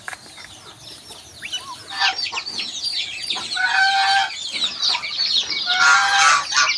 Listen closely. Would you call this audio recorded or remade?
recorded